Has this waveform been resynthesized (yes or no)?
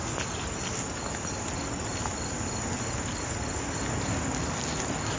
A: no